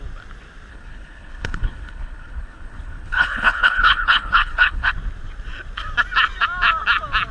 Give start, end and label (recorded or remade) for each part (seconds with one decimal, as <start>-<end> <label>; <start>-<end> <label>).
0.0-0.7 recorded; 0.7-4.9 remade; 4.9-7.3 recorded